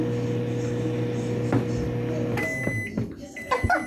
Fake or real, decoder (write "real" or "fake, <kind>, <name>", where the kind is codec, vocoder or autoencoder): real